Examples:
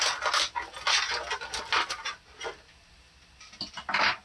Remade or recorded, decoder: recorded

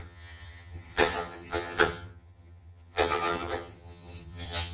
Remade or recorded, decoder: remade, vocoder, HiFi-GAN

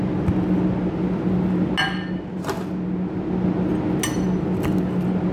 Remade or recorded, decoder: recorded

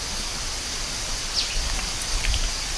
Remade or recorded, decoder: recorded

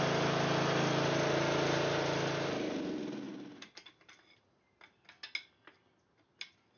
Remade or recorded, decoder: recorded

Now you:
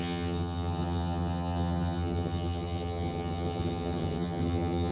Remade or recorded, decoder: remade, vocoder, HiFi-GAN